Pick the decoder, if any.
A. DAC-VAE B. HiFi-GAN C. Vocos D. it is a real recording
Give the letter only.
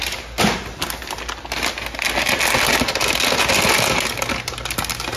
D